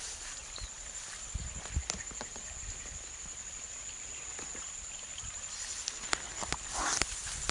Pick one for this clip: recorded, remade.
recorded